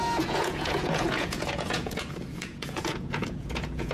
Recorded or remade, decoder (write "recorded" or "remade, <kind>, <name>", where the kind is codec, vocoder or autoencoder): remade, vocoder, Vocos